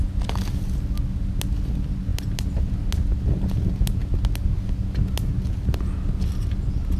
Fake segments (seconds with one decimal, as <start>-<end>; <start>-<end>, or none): none